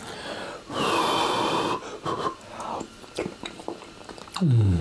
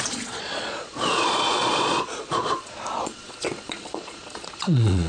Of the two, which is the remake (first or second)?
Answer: second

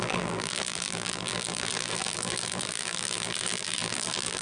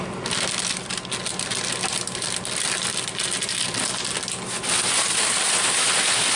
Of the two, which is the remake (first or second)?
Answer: first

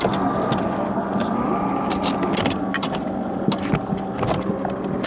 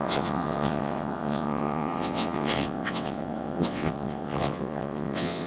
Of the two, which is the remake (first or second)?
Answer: second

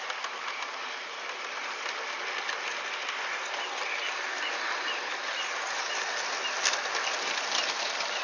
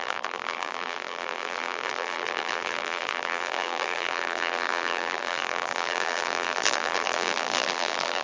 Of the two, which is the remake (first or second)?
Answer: second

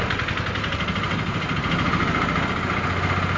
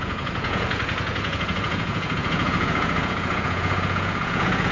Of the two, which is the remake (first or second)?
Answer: second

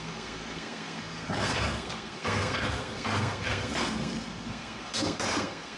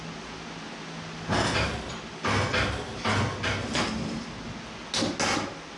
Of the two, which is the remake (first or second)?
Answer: first